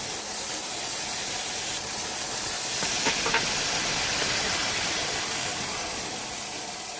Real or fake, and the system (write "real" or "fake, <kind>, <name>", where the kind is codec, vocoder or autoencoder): real